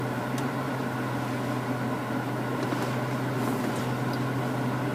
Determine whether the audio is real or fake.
real